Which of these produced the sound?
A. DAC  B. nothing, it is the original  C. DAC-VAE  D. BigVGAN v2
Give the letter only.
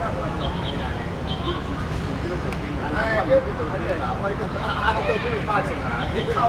C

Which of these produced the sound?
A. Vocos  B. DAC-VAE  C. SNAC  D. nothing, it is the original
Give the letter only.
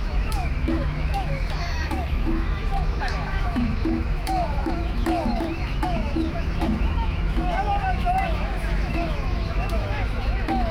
B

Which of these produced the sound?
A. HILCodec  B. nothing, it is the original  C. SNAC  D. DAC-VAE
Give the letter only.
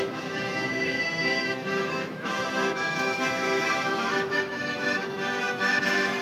D